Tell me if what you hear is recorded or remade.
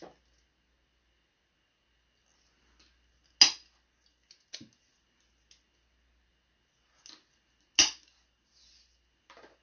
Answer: recorded